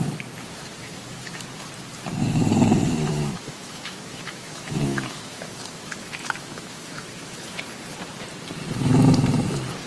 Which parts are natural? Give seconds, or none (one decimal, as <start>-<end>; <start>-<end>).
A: 0.0-0.8; 1.4-3.1; 7.6-9.9